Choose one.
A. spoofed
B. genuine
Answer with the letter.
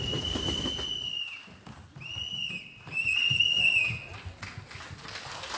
B